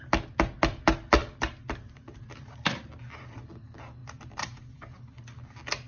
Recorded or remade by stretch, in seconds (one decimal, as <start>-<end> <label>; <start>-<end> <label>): 0.0-1.2 recorded; 1.2-2.8 remade; 2.8-4.0 recorded; 4.0-5.0 remade; 5.0-5.9 recorded